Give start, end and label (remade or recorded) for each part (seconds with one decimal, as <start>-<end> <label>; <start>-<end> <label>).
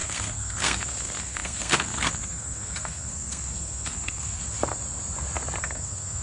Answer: 0.0-4.4 remade; 4.4-5.6 recorded; 5.6-6.2 remade